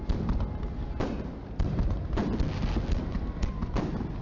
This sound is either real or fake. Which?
real